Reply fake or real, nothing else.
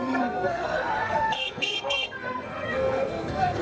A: fake